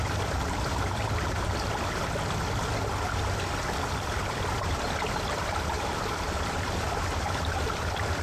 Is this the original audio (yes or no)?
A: no